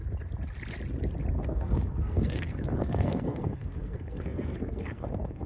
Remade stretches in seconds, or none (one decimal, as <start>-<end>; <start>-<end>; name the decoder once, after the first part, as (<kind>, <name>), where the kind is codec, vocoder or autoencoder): 1.4-5.5 (codec, SNAC)